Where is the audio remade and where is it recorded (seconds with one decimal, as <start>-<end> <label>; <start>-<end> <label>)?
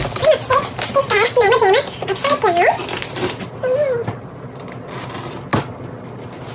0.0-1.0 recorded; 1.0-4.7 remade; 4.7-6.5 recorded